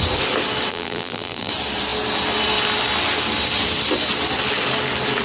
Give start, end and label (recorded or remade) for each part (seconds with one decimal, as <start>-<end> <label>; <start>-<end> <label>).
0.0-0.7 recorded; 0.7-1.5 remade; 1.5-5.2 recorded